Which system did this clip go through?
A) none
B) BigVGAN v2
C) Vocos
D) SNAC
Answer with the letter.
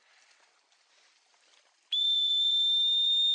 B